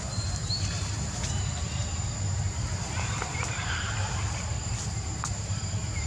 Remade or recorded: remade